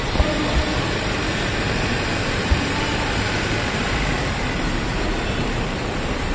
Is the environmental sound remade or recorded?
remade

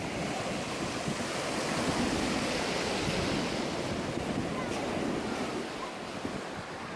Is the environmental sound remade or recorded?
recorded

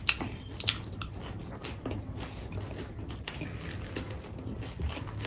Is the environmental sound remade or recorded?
recorded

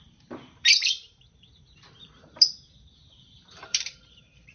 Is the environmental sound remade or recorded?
remade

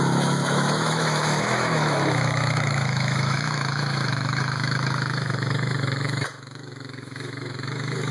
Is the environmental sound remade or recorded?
remade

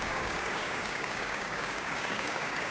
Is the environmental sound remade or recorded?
remade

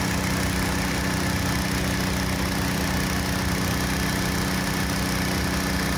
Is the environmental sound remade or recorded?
recorded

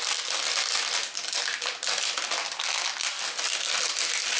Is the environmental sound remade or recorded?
recorded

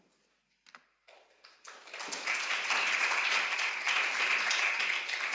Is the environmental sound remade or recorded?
recorded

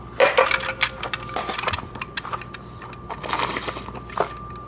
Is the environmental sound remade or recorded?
recorded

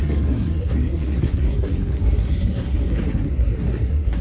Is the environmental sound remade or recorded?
remade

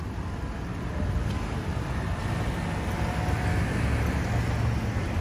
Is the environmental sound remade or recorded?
recorded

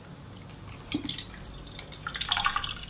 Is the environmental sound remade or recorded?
recorded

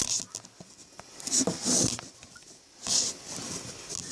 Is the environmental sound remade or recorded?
recorded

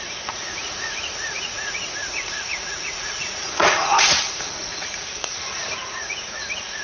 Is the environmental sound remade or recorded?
remade